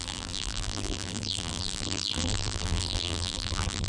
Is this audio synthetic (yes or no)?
yes